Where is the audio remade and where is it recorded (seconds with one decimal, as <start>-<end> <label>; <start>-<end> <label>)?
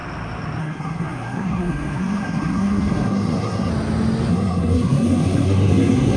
0.0-0.6 recorded; 0.6-3.7 remade; 3.7-4.3 recorded; 4.3-6.2 remade